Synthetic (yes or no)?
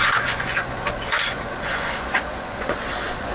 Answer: yes